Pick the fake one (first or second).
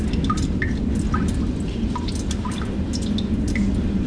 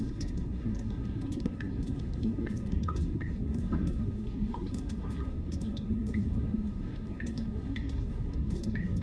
second